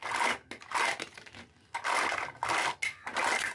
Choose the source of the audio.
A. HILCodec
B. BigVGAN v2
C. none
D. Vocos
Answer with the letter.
C